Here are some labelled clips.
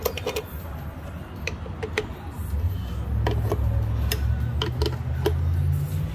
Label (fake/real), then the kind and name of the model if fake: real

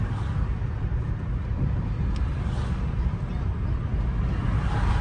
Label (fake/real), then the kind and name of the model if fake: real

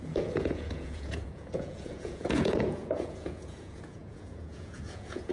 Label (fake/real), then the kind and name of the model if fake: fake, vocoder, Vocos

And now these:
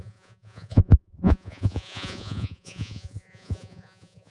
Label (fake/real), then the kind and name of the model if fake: fake, vocoder, Vocos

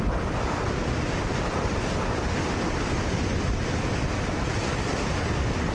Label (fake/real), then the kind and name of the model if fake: real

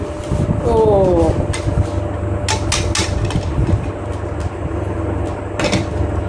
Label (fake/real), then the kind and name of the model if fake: real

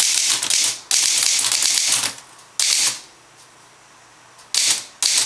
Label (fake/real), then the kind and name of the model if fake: real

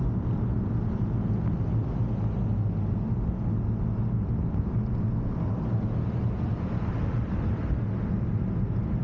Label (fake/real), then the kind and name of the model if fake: real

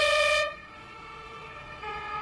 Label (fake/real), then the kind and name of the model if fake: fake, vocoder, Vocos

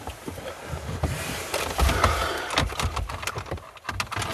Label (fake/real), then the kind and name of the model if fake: real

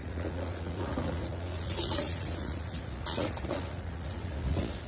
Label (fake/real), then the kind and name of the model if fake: fake, vocoder, Vocos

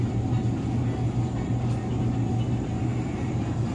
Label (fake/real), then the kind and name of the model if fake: real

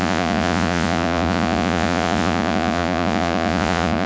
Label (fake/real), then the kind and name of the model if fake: fake, vocoder, Vocos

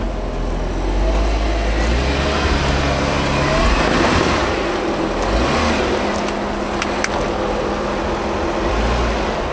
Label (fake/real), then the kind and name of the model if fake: real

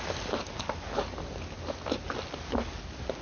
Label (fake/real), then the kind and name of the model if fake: real